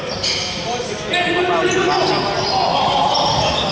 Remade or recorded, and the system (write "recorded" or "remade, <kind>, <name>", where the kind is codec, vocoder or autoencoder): recorded